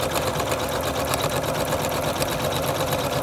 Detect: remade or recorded remade